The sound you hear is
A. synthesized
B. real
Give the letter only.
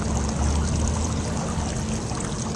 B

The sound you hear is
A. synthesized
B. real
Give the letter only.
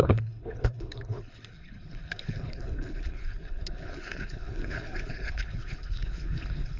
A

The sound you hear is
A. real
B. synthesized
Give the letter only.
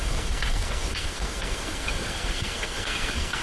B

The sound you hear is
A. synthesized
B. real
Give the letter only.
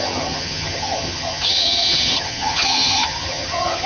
A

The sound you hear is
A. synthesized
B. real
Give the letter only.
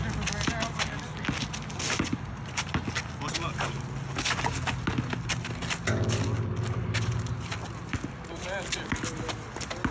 B